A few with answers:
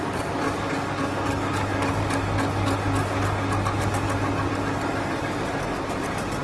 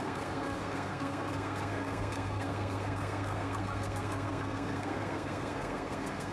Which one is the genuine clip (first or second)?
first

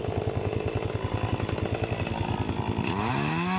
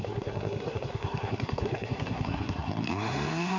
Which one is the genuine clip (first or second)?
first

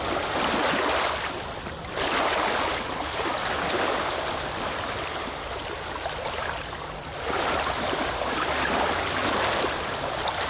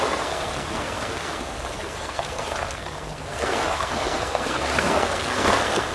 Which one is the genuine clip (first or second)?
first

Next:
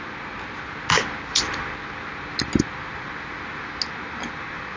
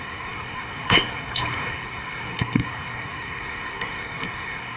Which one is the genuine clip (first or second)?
first